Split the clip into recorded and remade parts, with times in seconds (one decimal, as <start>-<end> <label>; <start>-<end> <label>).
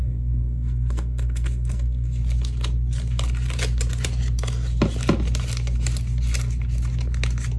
0.0-2.2 remade; 2.2-7.6 recorded